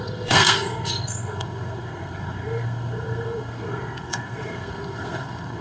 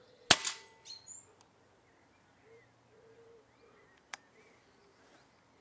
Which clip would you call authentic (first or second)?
second